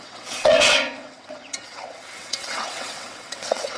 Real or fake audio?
fake